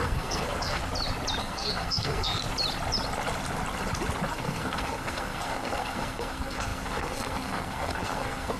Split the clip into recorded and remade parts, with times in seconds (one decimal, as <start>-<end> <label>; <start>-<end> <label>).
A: 0.0-0.8 remade; 0.8-1.4 recorded; 1.4-2.4 remade; 2.4-4.3 recorded; 4.3-8.6 remade